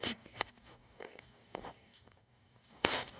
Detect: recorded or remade remade